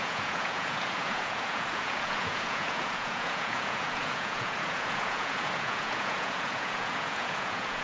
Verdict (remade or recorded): remade